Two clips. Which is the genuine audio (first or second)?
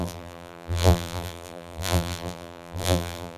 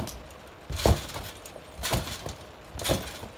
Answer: second